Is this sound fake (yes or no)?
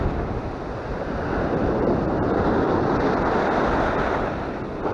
no